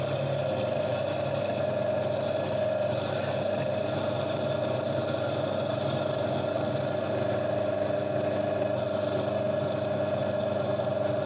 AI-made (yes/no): no